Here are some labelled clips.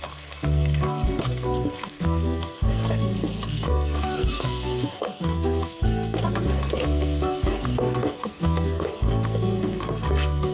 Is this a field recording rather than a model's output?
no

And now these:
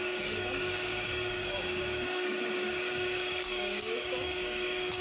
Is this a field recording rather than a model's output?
no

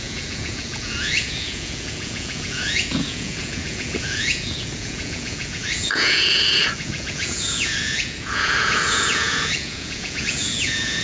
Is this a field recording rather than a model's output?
no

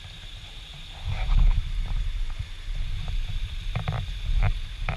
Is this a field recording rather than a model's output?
no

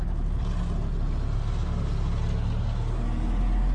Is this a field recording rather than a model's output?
yes